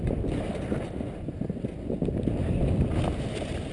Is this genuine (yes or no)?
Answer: yes